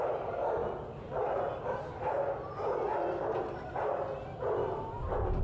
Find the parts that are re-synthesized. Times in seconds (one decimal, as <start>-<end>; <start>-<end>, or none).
4.6-5.4